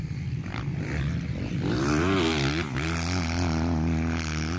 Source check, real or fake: real